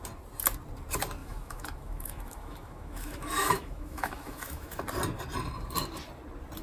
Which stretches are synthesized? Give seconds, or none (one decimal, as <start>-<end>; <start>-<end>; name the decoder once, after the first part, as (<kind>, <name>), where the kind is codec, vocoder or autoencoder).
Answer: 1.2-4.8 (autoencoder, DAC-VAE)